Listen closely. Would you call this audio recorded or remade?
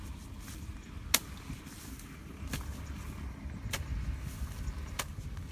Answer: recorded